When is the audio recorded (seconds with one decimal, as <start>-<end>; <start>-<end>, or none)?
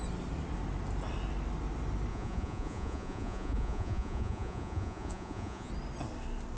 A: 0.0-2.1; 5.7-6.6